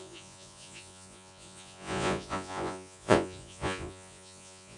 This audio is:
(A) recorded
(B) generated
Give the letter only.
B